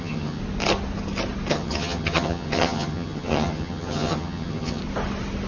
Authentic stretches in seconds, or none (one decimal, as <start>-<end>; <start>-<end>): 0.4-1.5; 4.8-5.5